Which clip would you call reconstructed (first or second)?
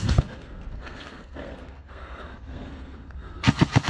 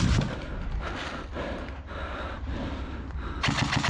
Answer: first